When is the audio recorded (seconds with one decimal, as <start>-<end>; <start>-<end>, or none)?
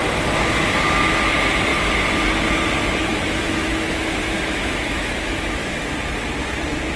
0.0-3.1; 5.6-7.0